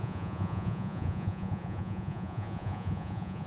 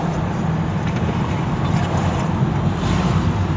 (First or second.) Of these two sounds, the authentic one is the second